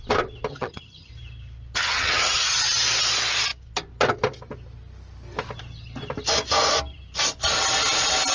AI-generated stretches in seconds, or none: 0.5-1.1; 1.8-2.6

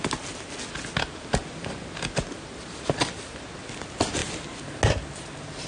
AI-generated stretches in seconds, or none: none

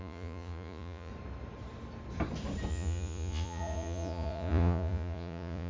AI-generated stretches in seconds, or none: 0.0-1.1; 2.7-5.7

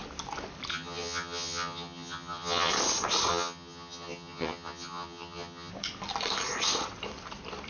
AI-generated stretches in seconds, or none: 0.7-2.7; 3.3-5.7

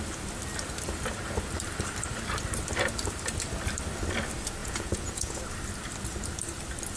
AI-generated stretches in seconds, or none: 4.6-5.4

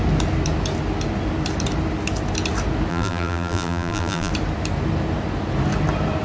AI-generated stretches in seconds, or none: 2.9-4.3

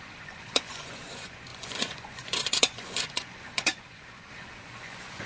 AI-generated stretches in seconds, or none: 0.0-5.3